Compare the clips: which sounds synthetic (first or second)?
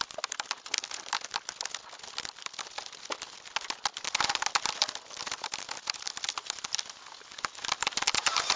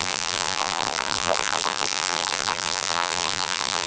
second